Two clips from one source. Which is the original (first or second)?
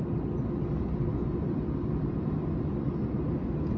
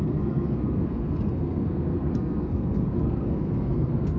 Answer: first